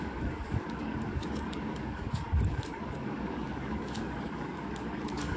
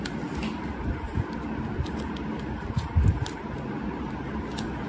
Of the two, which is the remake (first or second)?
first